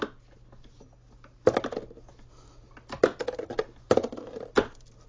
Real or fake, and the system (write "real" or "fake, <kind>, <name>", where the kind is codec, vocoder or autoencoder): real